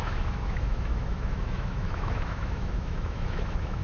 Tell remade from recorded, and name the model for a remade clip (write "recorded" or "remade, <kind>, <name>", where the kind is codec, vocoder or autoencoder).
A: remade, autoencoder, DAC-VAE